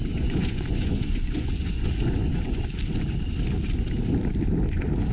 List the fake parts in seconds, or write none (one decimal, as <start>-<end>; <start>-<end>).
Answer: 0.0-2.6